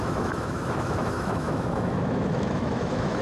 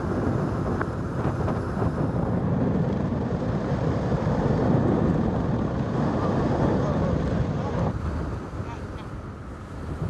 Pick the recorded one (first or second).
second